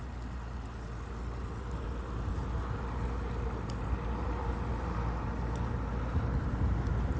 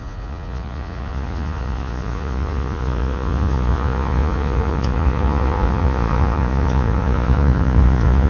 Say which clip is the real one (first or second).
first